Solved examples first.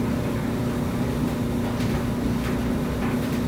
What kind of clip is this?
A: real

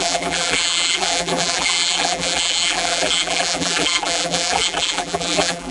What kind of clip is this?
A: fake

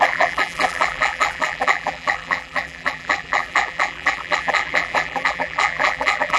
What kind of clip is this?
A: fake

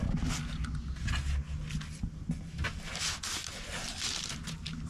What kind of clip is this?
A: real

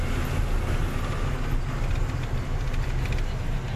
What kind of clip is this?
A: real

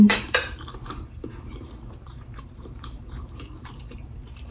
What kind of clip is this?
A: fake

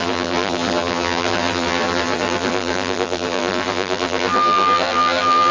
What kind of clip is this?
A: fake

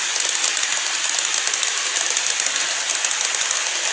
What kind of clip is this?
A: real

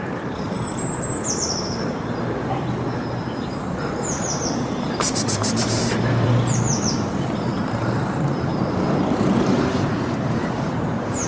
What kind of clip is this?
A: fake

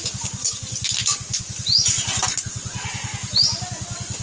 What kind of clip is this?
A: real